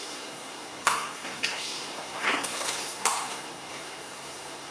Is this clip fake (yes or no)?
yes